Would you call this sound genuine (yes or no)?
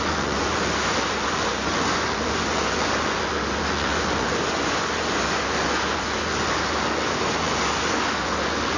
no